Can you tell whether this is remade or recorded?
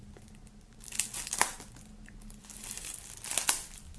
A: recorded